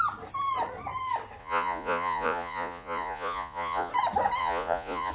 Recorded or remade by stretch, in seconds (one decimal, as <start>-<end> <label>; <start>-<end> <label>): 0.0-1.4 recorded; 1.4-3.9 remade; 3.9-4.4 recorded; 4.4-5.1 remade